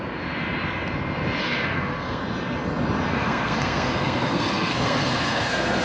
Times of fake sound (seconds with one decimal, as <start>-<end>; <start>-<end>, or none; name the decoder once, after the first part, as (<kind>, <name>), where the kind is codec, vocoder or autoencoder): 1.4-2.2 (codec, SNAC); 3.1-5.8